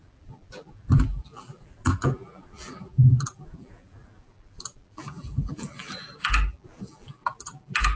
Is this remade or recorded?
remade